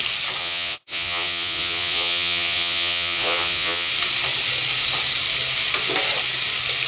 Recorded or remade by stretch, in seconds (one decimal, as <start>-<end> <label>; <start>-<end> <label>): 0.0-0.4 recorded; 0.4-3.9 remade; 3.9-6.9 recorded